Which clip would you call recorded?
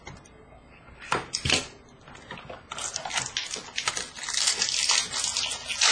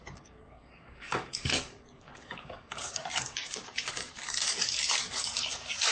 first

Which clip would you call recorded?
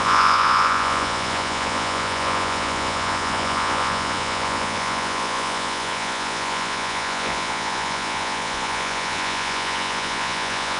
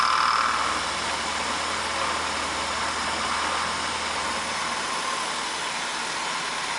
second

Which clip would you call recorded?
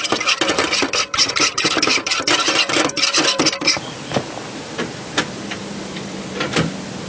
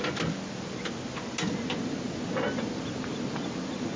second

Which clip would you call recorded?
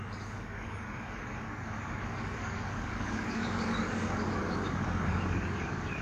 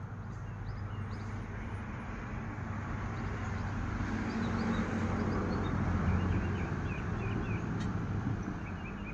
second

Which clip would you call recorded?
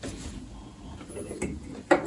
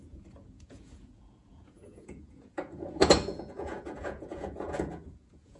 first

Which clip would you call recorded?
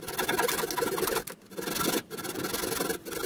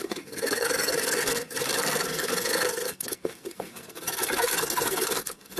first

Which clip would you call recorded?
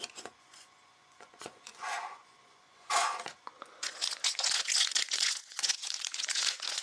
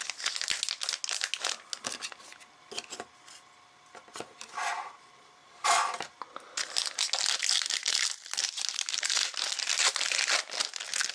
second